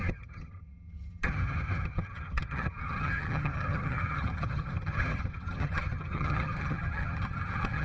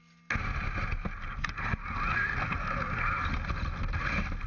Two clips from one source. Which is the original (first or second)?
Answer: second